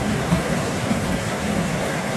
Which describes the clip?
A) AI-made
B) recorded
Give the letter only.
A